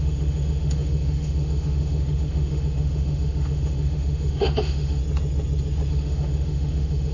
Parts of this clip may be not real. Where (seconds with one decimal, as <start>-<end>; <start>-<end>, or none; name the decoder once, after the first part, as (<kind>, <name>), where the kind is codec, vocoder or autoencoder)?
0.0-5.0 (autoencoder, DAC-VAE); 5.9-7.1